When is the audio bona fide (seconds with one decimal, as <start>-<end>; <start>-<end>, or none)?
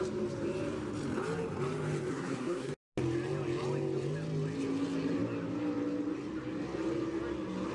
0.0-2.1; 2.7-7.7